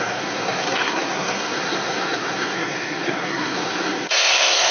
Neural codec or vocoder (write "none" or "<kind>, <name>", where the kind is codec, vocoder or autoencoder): codec, SNAC